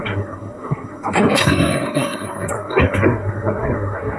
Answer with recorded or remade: remade